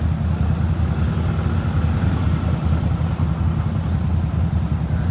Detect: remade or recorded recorded